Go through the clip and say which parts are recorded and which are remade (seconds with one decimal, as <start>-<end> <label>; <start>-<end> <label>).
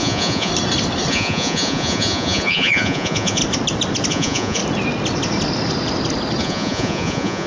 0.0-0.5 remade; 0.5-1.1 recorded; 1.1-3.4 remade; 3.4-4.1 recorded; 4.1-4.6 remade; 4.6-6.4 recorded; 6.4-7.5 remade